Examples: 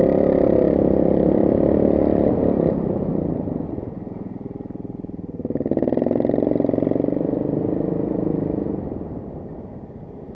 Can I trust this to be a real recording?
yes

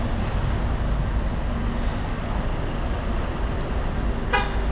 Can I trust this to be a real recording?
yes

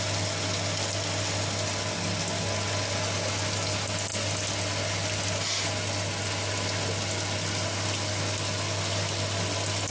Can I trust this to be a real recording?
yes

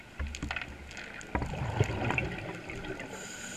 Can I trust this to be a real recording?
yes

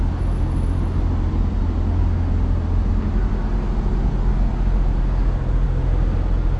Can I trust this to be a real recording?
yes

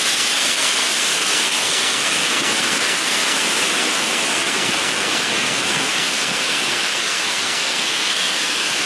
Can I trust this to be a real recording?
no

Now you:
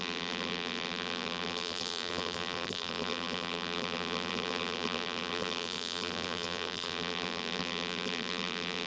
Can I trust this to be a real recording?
no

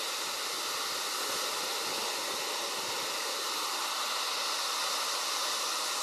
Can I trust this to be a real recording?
yes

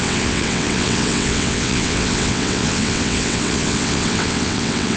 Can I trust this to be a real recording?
no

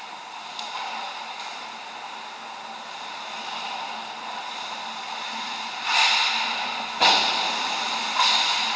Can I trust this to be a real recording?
yes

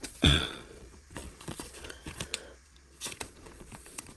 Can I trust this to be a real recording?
no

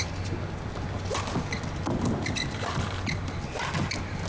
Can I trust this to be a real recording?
yes